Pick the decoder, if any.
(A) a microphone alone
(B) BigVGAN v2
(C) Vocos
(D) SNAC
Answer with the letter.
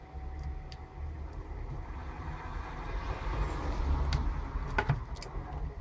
A